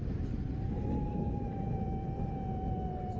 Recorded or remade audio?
recorded